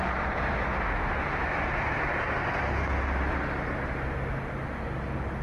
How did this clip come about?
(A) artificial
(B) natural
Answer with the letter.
B